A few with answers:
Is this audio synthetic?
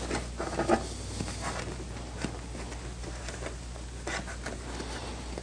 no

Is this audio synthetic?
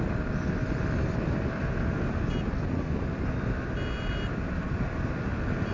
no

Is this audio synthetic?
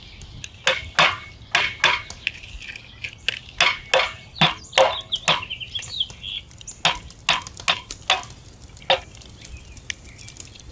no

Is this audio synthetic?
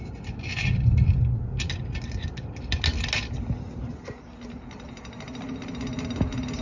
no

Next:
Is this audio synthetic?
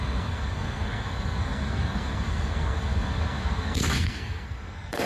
yes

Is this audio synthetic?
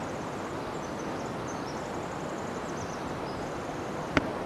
no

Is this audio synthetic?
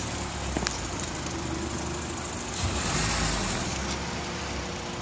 no